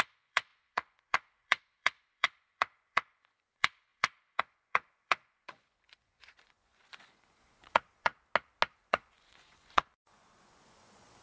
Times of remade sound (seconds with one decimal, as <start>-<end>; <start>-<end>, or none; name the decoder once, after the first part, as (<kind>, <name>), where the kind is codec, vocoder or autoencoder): 0.0-8.1 (vocoder, Vocos); 8.7-11.2